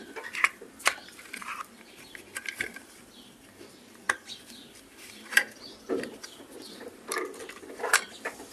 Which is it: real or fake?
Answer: fake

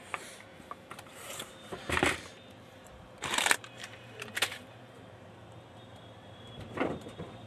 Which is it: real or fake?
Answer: fake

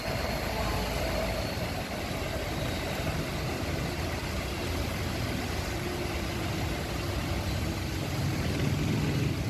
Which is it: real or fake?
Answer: real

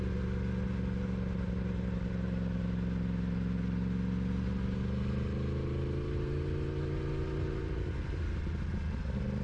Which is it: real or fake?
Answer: real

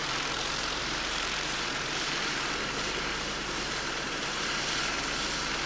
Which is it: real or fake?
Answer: fake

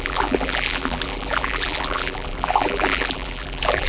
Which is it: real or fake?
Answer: fake